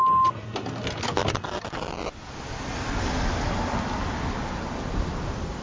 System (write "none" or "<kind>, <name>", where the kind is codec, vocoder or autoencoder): none